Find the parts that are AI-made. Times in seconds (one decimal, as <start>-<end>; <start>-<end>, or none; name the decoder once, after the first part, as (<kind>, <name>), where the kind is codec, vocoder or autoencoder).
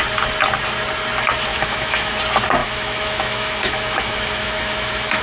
1.5-2.2 (autoencoder, DAC-VAE); 2.6-5.2